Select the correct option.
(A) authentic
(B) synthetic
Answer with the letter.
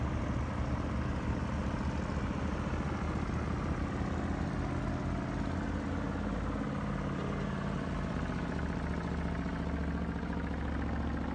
A